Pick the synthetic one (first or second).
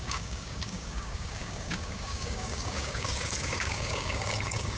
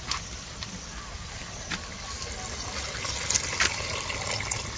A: first